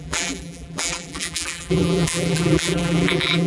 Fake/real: fake